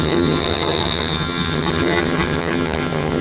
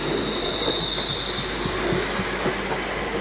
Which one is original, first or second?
second